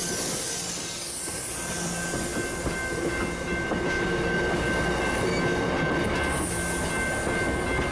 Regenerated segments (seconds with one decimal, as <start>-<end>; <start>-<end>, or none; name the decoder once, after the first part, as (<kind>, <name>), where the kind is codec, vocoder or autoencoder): none